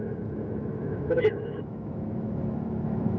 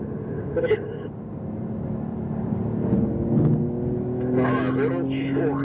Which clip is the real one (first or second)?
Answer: second